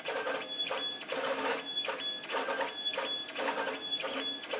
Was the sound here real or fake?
real